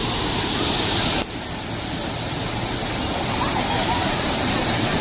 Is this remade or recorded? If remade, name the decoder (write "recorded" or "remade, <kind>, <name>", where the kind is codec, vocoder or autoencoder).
recorded